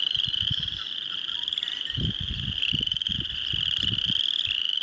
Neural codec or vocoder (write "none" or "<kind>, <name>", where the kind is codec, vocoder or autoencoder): none